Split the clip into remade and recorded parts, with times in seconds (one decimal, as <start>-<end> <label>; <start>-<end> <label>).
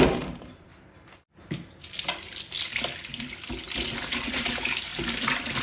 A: 0.0-0.7 remade; 0.7-4.1 recorded; 4.1-4.9 remade; 4.9-5.6 recorded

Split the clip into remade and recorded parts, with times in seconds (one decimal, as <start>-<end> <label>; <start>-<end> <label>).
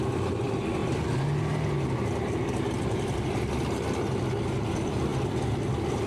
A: 0.0-6.1 recorded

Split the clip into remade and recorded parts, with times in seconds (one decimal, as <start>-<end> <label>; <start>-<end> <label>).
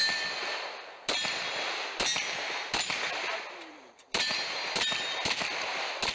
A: 0.0-6.1 recorded